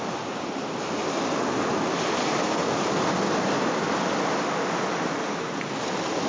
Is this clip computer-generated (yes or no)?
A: no